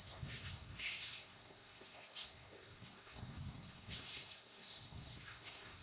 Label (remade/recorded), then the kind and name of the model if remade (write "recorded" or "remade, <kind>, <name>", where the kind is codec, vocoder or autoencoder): remade, codec, SNAC